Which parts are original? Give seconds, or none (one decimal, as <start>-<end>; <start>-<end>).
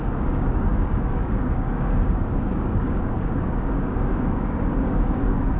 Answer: none